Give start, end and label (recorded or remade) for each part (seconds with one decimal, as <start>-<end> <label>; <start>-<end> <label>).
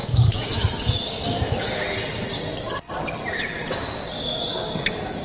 0.0-1.8 remade; 1.8-5.2 recorded